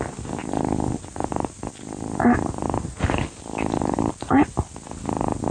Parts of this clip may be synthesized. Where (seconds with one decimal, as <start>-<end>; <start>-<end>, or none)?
none